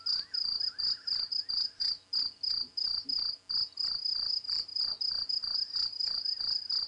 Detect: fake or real real